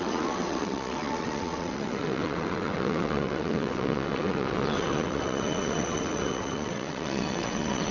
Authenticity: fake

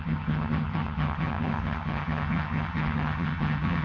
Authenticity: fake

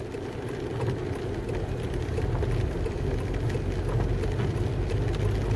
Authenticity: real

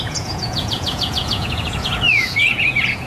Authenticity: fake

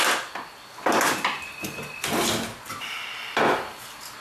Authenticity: real